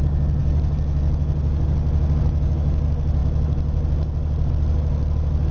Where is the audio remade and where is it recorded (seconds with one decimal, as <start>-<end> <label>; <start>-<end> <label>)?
0.0-5.5 recorded